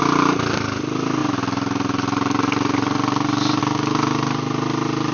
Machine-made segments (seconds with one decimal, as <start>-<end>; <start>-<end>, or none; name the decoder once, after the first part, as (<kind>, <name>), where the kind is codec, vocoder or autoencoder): none